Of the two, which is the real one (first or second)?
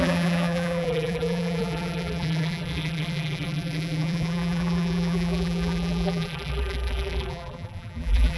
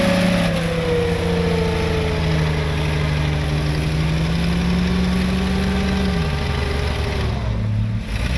second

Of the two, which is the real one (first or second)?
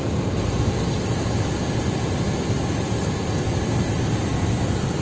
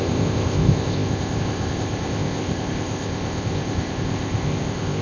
first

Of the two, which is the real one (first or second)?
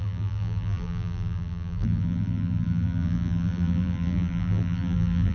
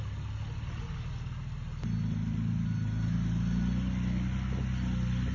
second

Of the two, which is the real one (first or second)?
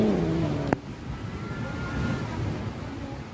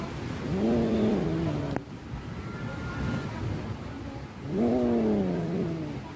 first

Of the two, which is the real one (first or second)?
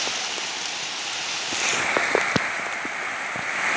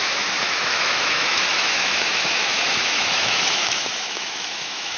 first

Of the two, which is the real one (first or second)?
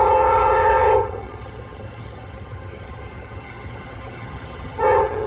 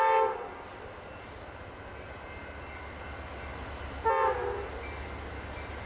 second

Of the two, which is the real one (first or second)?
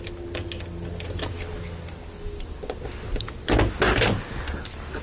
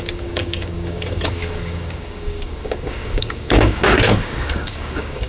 first